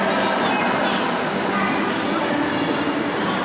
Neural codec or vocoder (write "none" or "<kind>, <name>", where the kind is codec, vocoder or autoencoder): none